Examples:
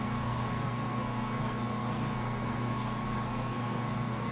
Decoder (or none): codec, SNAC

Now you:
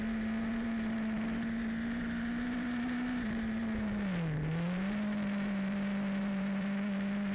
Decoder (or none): vocoder, BigVGAN v2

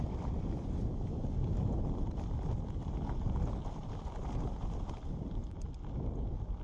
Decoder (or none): none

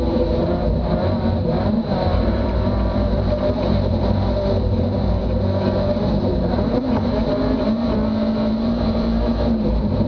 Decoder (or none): vocoder, BigVGAN v2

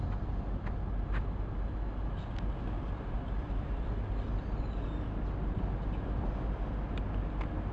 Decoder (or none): none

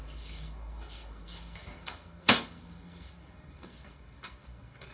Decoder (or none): codec, SNAC